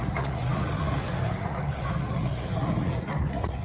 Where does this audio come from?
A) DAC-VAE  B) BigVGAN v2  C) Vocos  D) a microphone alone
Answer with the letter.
C